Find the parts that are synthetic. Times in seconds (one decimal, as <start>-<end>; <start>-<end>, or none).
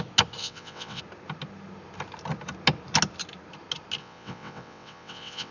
0.4-1.0; 4.0-5.5